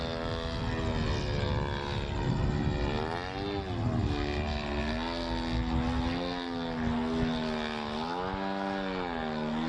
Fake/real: real